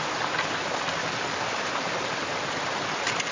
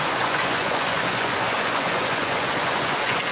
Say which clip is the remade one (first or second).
second